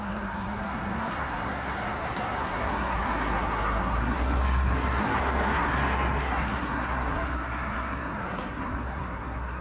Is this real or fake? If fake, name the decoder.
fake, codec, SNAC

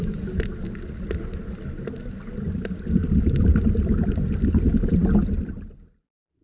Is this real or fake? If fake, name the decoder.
real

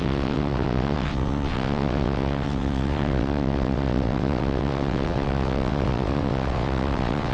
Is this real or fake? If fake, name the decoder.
fake, vocoder, WaveNeXt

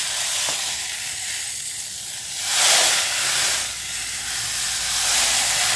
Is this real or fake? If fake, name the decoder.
real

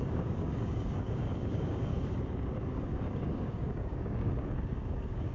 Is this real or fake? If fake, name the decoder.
fake, codec, DAC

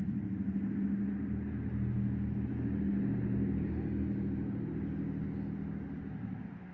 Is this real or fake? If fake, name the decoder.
real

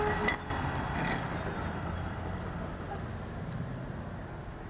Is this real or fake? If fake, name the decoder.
real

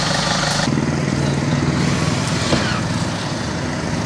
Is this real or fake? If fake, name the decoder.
real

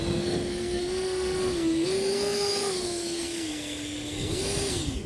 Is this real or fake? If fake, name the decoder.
fake, codec, SNAC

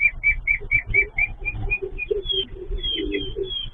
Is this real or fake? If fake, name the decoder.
real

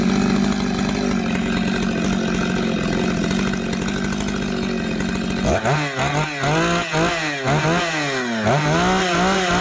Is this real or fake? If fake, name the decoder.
real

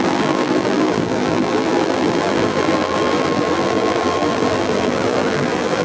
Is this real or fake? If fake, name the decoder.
fake, vocoder, BigVGAN v2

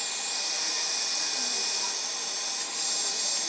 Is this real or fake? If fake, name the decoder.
real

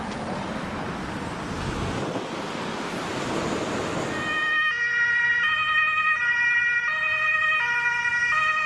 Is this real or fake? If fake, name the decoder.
real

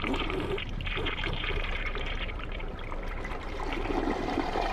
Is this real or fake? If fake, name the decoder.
fake, vocoder, BigVGAN v2